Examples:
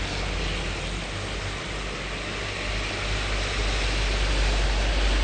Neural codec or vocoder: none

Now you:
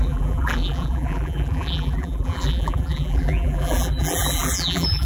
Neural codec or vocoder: vocoder, BigVGAN v2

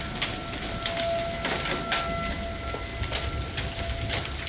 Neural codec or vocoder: none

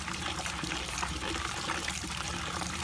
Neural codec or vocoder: vocoder, BigVGAN v2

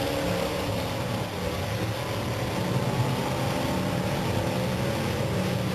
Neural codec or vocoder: none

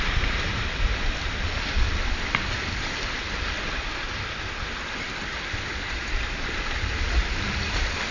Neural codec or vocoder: vocoder, BigVGAN v2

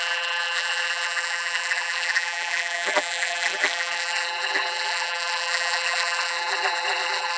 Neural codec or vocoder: vocoder, BigVGAN v2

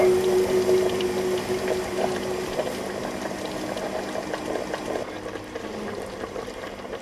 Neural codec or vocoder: vocoder, BigVGAN v2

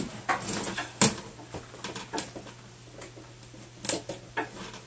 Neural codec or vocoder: none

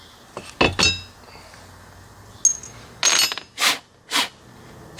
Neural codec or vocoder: none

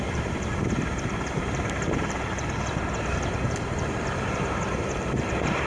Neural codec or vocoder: vocoder, BigVGAN v2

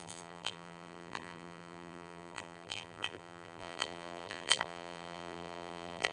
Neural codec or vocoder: vocoder, BigVGAN v2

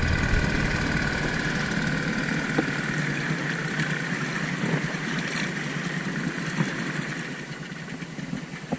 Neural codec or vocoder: none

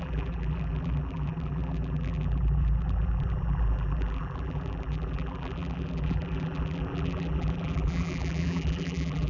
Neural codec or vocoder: vocoder, BigVGAN v2